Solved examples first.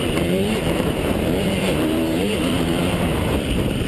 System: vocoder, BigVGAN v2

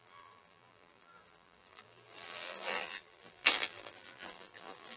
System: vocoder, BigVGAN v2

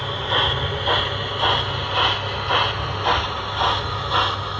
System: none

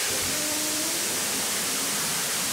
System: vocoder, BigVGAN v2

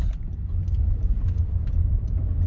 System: vocoder, BigVGAN v2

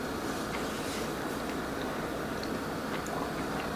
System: none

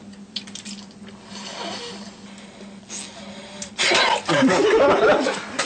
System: none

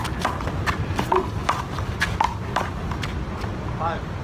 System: none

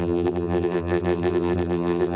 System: vocoder, BigVGAN v2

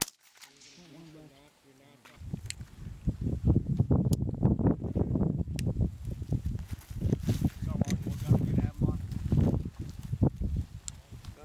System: none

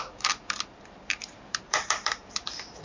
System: vocoder, BigVGAN v2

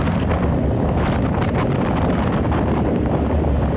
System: vocoder, BigVGAN v2